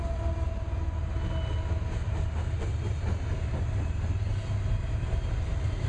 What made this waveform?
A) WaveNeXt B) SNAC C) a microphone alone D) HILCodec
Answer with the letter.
C